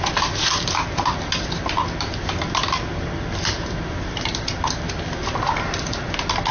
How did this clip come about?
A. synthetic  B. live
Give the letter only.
B